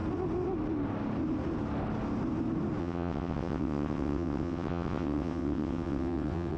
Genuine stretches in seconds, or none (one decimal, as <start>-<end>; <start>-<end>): 0.0-2.8